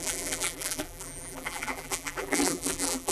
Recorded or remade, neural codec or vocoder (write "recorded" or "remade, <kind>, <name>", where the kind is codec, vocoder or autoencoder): remade, vocoder, BigVGAN v2